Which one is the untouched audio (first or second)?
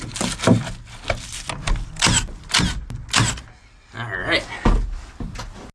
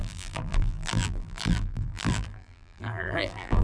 first